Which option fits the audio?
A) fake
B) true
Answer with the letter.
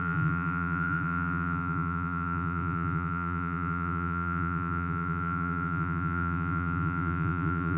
A